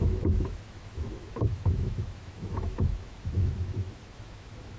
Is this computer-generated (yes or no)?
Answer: yes